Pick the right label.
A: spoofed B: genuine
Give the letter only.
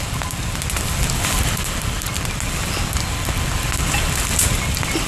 B